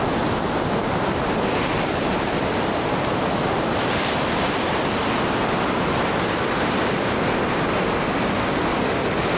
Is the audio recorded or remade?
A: recorded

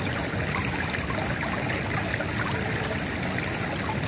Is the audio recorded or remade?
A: recorded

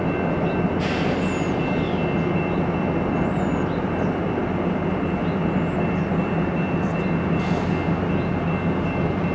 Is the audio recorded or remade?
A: recorded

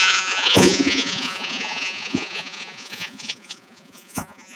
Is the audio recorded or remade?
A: remade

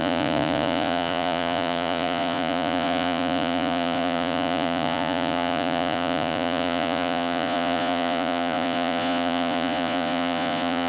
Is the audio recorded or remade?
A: remade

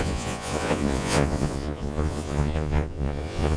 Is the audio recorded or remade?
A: remade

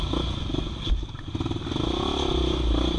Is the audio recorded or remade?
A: recorded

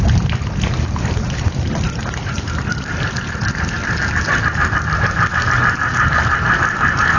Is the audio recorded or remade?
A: recorded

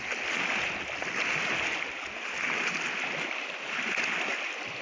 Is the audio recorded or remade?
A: recorded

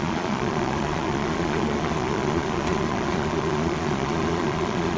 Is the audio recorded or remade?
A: remade